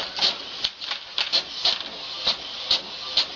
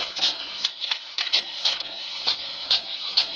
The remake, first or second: second